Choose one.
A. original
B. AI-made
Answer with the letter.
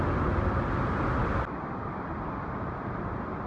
A